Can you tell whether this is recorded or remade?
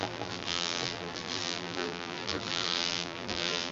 remade